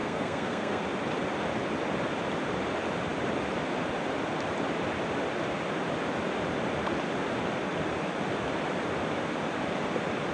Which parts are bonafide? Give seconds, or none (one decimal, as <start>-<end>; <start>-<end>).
0.8-10.3